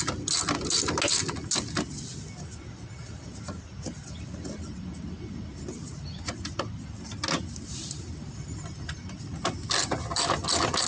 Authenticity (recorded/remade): recorded